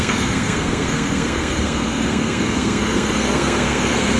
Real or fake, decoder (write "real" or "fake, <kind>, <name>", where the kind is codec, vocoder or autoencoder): fake, codec, SNAC